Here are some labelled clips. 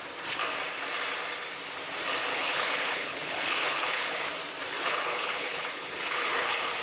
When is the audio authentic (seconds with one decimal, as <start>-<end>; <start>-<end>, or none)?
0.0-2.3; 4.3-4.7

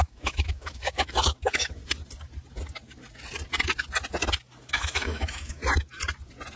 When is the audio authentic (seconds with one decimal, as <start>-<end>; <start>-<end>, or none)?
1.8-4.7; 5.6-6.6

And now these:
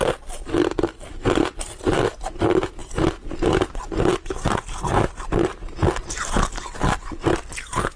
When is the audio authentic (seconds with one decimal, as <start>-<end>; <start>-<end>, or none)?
0.0-8.0

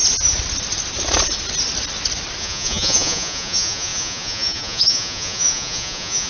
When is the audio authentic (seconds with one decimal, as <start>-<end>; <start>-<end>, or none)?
0.0-2.4